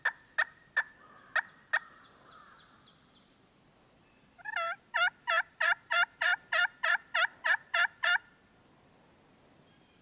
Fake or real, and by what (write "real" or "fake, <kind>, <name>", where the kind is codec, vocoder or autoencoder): real